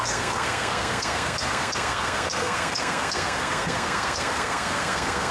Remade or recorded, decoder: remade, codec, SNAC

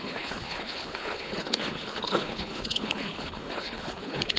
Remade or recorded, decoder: remade, codec, HILCodec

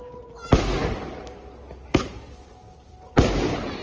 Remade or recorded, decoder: recorded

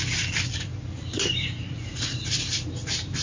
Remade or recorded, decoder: remade, vocoder, BigVGAN v2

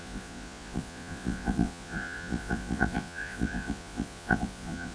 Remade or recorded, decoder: remade, vocoder, Vocos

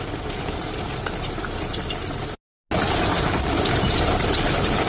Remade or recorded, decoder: recorded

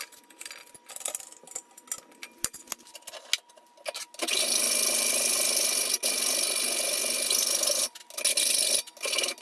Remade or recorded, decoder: recorded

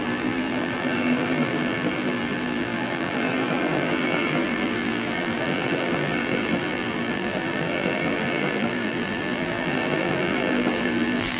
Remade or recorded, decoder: remade, vocoder, BigVGAN v2